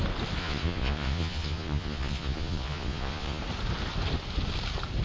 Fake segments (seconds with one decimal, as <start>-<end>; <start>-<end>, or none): 0.4-3.4